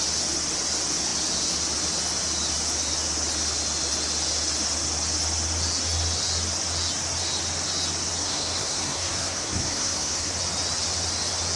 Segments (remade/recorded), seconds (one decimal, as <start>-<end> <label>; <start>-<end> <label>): 0.0-8.2 recorded; 8.2-10.3 remade; 10.3-11.6 recorded